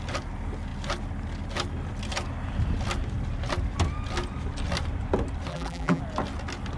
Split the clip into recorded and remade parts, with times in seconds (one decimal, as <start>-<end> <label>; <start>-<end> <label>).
0.0-5.5 recorded; 5.5-6.0 remade; 6.0-6.8 recorded